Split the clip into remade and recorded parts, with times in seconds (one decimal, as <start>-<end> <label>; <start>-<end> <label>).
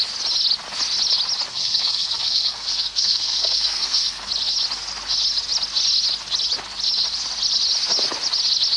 0.0-1.5 recorded; 1.5-4.3 remade; 4.3-8.8 recorded